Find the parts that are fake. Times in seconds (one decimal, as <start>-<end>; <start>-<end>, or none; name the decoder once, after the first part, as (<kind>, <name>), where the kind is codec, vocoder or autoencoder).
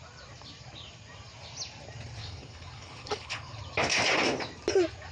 2.2-3.6 (codec, HILCodec)